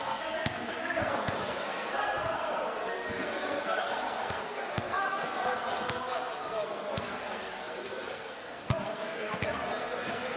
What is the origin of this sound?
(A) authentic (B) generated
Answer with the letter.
B